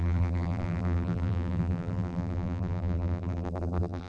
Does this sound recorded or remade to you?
remade